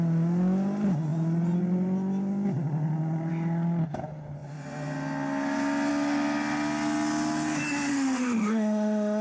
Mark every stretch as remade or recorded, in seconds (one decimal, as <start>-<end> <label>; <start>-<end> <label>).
0.0-7.9 recorded; 7.9-9.2 remade